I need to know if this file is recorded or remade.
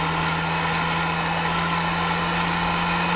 recorded